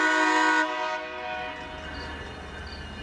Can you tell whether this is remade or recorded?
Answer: recorded